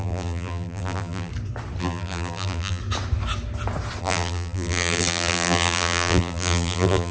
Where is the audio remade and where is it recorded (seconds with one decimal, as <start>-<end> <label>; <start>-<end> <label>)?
0.0-1.3 remade; 1.3-1.8 recorded; 1.8-2.8 remade; 2.8-4.0 recorded; 4.0-7.1 remade